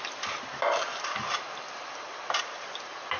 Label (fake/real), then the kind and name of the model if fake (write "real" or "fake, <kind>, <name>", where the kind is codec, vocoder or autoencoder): real